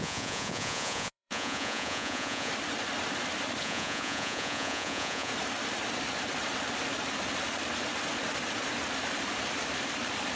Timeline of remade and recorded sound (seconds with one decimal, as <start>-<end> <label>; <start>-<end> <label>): 0.0-2.5 remade; 2.5-3.6 recorded; 3.6-5.3 remade; 5.3-10.4 recorded